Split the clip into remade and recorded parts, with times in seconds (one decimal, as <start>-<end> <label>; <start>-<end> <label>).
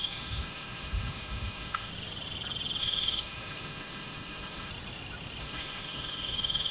0.0-1.9 remade; 1.9-2.8 recorded; 2.8-4.7 remade; 4.7-5.4 recorded; 5.4-6.7 remade